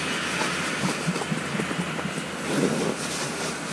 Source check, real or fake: real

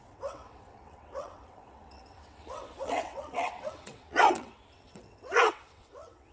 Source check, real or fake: fake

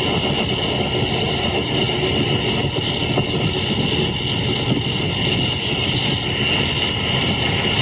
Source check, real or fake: real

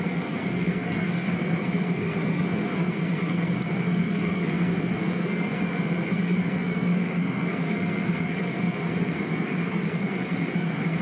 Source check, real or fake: fake